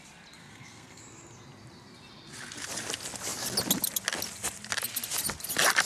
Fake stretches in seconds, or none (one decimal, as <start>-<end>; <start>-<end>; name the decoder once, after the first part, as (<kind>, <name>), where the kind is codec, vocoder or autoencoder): 0.4-1.0 (codec, SNAC)